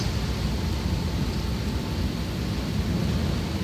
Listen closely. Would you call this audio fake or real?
real